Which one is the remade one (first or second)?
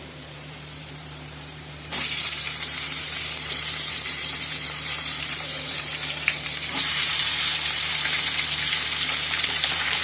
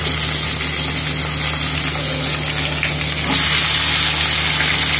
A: first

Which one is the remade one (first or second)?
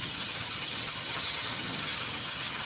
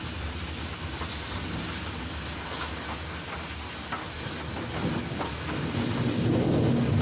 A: first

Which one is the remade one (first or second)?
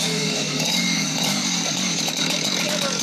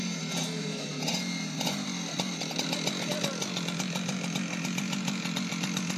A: first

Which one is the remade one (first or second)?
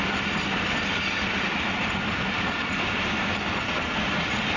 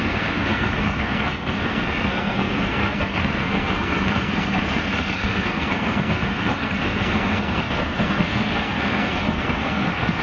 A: second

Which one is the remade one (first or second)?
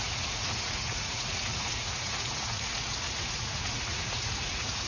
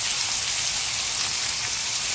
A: first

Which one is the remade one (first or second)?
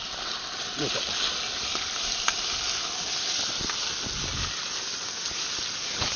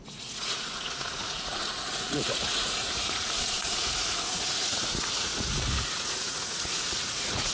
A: second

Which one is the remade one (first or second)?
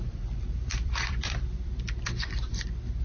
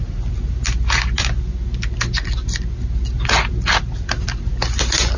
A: first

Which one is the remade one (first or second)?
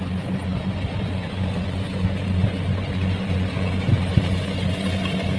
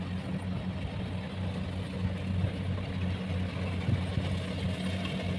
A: first